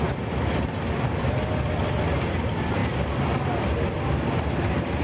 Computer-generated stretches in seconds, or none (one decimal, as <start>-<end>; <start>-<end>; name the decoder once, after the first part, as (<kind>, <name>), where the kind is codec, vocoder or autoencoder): none